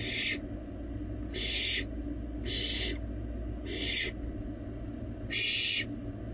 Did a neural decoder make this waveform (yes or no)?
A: no